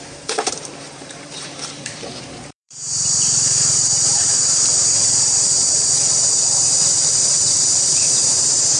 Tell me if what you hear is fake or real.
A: fake